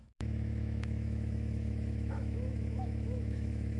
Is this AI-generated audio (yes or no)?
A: yes